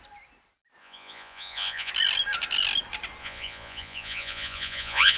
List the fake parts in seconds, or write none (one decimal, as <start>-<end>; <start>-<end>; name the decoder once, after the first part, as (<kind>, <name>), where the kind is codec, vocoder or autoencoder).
0.8-1.9 (vocoder, Vocos); 3.2-5.2